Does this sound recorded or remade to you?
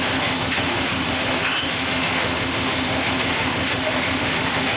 remade